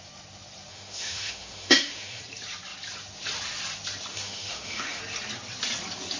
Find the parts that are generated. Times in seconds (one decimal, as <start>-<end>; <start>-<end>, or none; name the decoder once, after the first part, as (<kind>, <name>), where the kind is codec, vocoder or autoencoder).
0.7-2.2 (autoencoder, DAC-VAE); 4.1-5.0